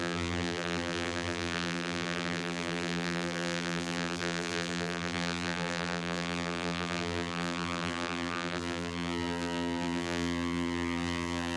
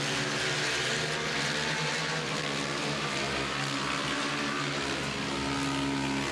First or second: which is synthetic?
first